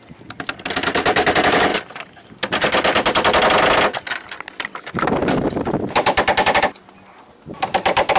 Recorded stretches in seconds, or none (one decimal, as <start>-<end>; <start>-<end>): 0.0-8.2